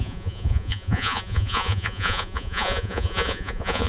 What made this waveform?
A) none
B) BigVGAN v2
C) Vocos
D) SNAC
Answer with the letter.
C